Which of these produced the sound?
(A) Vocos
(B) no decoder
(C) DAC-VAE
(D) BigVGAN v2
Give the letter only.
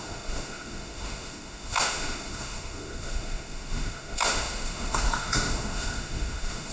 C